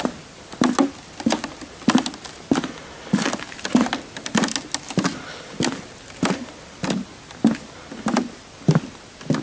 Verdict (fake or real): real